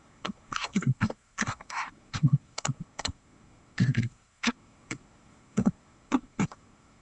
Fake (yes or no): yes